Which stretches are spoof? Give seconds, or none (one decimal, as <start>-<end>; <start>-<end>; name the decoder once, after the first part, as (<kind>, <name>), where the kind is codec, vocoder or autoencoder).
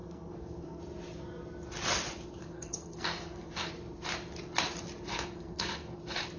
0.0-0.8 (codec, SNAC); 2.4-3.7; 5.1-6.0